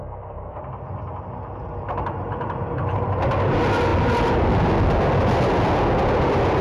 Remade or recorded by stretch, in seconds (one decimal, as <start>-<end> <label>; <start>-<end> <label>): 0.0-0.6 remade; 0.6-6.6 recorded

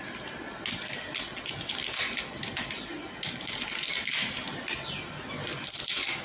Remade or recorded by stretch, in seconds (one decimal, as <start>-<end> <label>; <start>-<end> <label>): 0.0-6.2 recorded

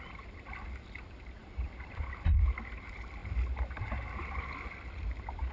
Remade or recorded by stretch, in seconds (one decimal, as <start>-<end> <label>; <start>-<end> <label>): 0.0-5.5 remade

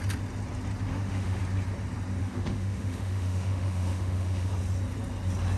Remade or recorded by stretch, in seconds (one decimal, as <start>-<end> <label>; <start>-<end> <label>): 0.0-0.9 recorded; 0.9-1.4 remade; 1.4-2.2 recorded; 2.2-4.5 remade; 4.5-5.6 recorded

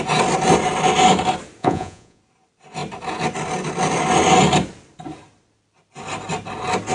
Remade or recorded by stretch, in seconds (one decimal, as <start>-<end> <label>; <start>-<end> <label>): 0.0-1.6 recorded; 1.6-2.2 remade; 2.2-6.9 recorded

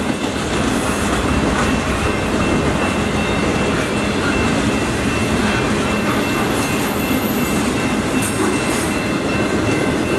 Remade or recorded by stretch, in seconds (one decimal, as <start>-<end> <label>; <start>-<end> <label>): 0.0-10.2 recorded

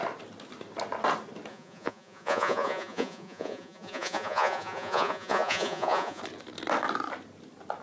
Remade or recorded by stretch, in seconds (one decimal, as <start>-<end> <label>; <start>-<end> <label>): 0.0-1.5 recorded; 1.5-6.2 remade; 6.2-7.8 recorded

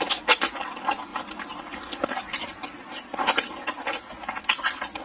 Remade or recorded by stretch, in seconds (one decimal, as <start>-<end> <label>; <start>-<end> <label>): 0.0-5.0 recorded